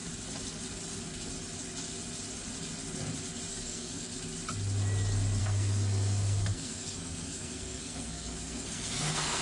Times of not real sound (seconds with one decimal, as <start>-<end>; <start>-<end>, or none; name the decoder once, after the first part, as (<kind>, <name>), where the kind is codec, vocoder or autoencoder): 3.5-4.1 (codec, SNAC); 5.4-9.4